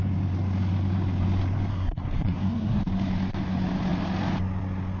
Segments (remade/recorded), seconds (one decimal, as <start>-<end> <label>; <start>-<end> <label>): 0.0-1.7 recorded; 1.7-2.8 remade; 2.8-5.0 recorded